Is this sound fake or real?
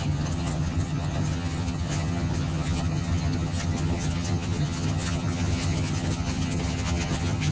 fake